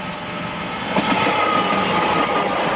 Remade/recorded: recorded